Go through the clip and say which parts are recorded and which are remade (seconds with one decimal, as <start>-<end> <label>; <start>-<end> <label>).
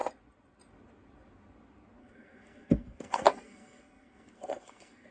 0.0-2.0 recorded; 2.0-5.1 remade